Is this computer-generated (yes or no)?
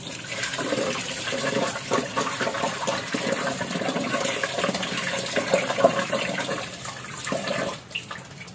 yes